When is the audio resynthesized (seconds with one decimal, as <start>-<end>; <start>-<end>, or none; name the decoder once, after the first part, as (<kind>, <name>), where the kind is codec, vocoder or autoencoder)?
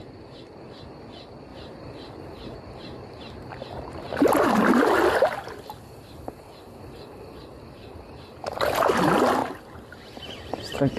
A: 1.5-4.4 (vocoder, BigVGAN v2); 7.8-8.8; 9.4-10.2